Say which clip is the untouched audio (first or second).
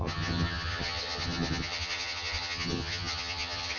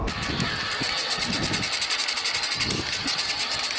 second